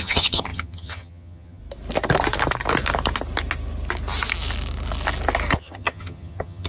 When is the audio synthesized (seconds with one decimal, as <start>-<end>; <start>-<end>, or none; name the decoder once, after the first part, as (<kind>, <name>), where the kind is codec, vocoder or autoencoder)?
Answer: 0.0-1.6 (vocoder, HiFi-GAN); 5.6-6.7